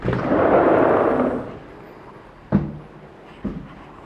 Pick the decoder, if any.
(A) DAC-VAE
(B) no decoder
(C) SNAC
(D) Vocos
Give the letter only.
B